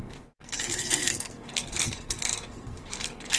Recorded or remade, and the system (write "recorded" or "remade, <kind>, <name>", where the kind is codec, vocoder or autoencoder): remade, codec, SNAC